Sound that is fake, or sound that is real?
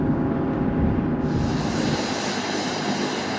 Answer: real